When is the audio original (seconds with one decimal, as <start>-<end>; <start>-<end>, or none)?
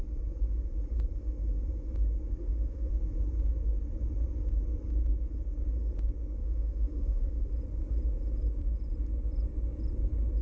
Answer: 0.0-2.4; 2.9-6.4; 7.5-10.4